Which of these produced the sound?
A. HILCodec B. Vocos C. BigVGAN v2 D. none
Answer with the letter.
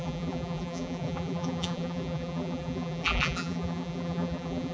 C